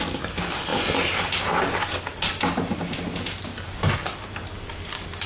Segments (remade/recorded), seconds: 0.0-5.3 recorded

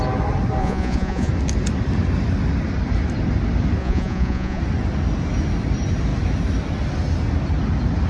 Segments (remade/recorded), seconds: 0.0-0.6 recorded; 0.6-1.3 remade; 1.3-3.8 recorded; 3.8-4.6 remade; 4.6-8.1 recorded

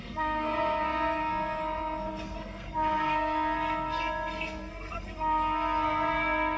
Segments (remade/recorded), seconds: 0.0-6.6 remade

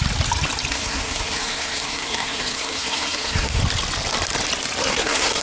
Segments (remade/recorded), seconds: 0.0-0.7 recorded; 0.7-3.6 remade; 3.6-4.8 recorded; 4.8-5.4 remade

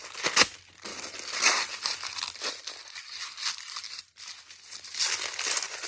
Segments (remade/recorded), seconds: 0.0-5.9 recorded

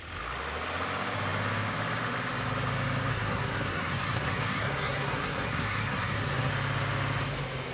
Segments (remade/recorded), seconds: 0.0-3.1 recorded; 3.1-6.5 remade; 6.5-7.7 recorded

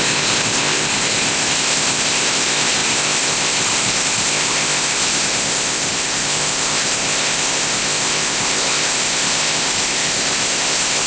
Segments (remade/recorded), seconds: 0.0-11.1 remade

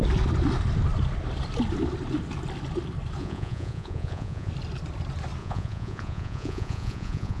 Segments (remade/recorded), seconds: 0.0-3.2 recorded; 3.2-4.5 remade; 4.5-5.4 recorded; 5.4-7.4 remade